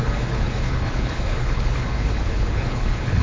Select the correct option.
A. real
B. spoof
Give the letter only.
B